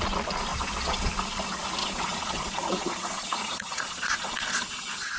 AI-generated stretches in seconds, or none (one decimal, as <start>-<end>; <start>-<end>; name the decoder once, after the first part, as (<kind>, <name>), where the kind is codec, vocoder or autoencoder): 0.5-1.1 (vocoder, Vocos); 1.8-5.2